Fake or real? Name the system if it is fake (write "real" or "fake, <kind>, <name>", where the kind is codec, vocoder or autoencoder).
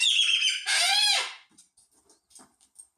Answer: real